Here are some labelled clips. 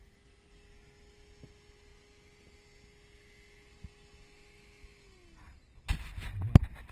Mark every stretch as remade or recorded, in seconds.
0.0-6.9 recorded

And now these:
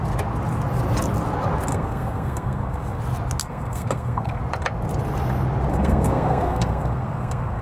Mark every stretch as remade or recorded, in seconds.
0.0-1.7 recorded; 1.7-3.0 remade; 3.0-3.4 recorded; 3.4-4.4 remade; 4.4-5.7 recorded; 5.7-7.6 remade

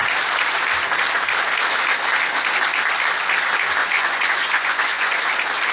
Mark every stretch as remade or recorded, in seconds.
0.0-3.8 recorded; 3.8-5.2 remade; 5.2-5.7 recorded

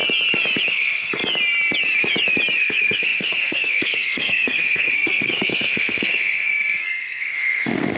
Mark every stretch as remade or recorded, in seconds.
0.0-0.7 recorded; 0.7-1.2 remade; 1.2-2.6 recorded; 2.6-8.0 remade

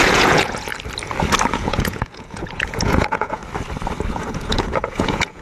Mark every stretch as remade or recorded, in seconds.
0.0-0.7 remade; 0.7-1.5 recorded; 1.5-3.4 remade; 3.4-4.1 recorded; 4.1-5.4 remade

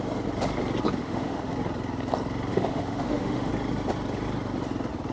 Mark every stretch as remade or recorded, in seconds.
0.0-1.0 recorded; 1.0-1.5 remade; 1.5-2.5 recorded; 2.5-3.5 remade; 3.5-5.1 recorded

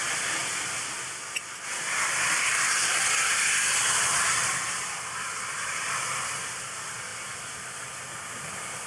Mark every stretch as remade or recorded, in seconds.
0.0-8.9 recorded

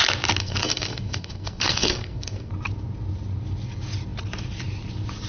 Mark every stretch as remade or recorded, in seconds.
0.0-0.4 recorded; 0.4-2.5 remade; 2.5-5.3 recorded